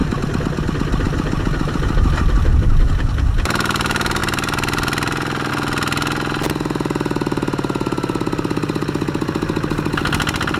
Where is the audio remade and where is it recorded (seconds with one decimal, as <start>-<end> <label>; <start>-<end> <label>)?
0.0-0.6 remade; 0.6-4.2 recorded; 4.2-5.5 remade; 5.5-10.6 recorded